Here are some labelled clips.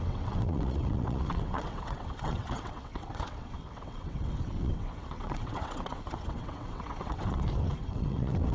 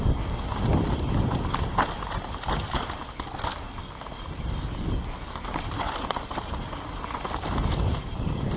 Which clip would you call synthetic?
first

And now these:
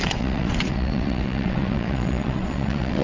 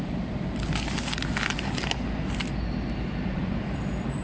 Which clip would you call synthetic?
first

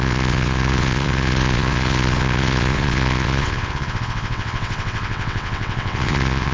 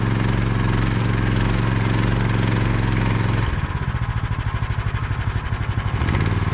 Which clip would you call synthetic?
first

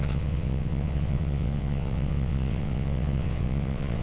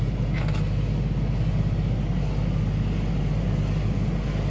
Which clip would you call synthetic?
first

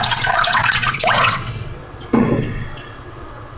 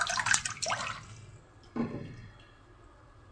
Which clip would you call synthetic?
first